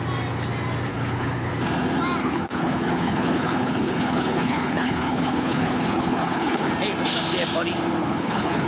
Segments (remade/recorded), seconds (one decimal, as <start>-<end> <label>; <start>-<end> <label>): 0.0-0.9 recorded; 0.9-1.5 remade; 1.5-2.2 recorded; 2.2-6.7 remade; 6.7-8.0 recorded; 8.0-8.7 remade